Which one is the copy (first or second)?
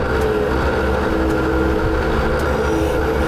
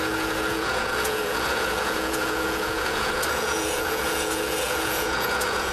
second